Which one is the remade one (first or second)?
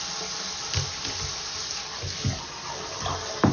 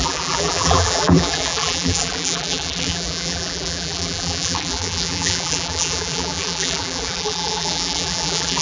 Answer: second